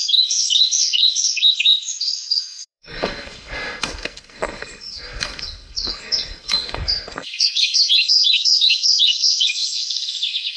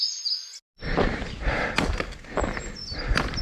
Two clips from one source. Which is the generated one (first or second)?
first